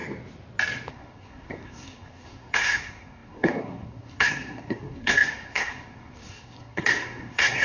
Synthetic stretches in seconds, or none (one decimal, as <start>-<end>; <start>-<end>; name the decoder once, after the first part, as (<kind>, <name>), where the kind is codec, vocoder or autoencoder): 0.9-7.6 (codec, SNAC)